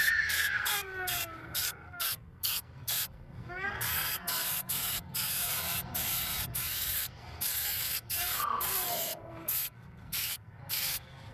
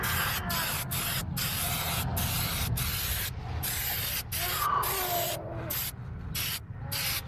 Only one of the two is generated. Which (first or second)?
first